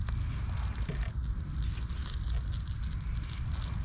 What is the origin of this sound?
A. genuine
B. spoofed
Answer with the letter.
A